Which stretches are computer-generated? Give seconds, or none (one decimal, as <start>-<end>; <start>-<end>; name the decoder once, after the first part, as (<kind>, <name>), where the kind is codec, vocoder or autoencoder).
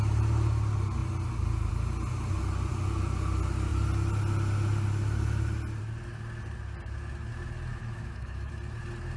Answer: 7.7-8.5 (autoencoder, DAC-VAE)